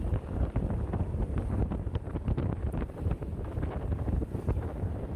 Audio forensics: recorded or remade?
recorded